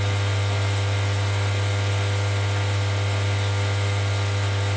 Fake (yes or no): no